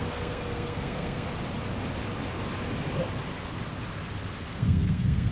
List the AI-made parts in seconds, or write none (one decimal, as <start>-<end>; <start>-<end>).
0.0-1.3; 4.5-5.3